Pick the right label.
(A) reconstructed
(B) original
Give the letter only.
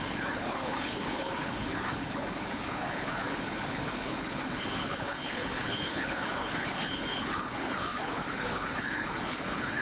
A